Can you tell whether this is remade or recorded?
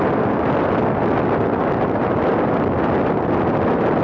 recorded